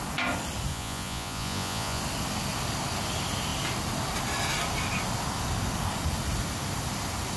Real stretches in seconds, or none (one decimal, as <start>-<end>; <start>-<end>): 0.0-0.7; 2.0-7.4